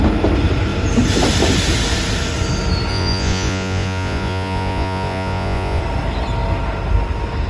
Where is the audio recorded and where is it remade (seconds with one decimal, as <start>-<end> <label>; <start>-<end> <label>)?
0.0-2.9 recorded; 2.9-5.8 remade; 5.8-7.5 recorded